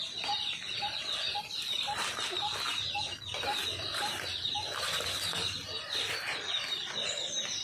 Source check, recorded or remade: recorded